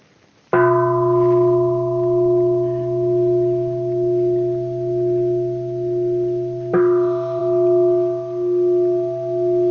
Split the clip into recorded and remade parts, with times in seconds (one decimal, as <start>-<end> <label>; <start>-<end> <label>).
0.0-9.7 recorded